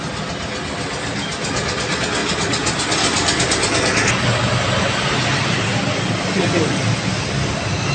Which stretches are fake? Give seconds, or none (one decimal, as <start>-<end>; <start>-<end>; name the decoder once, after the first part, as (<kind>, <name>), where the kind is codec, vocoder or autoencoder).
none